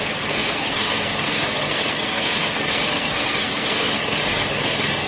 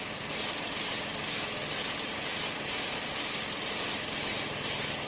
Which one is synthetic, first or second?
first